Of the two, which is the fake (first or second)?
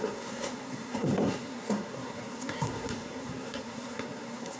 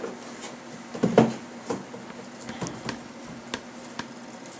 first